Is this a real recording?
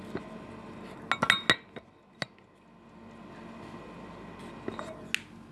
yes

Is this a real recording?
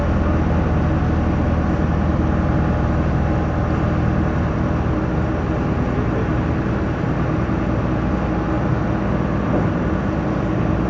yes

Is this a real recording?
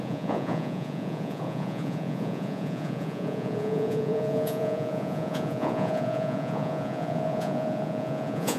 no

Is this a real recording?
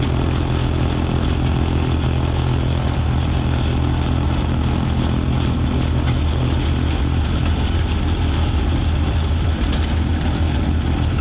yes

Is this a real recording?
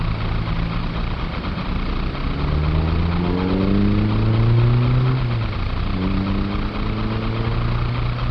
yes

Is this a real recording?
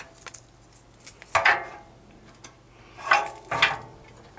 yes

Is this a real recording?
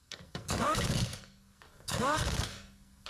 no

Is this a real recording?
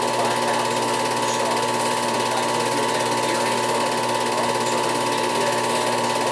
yes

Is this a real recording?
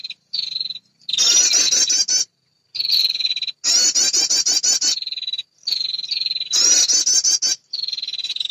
yes